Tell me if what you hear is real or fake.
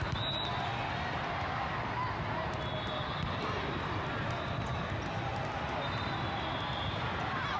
real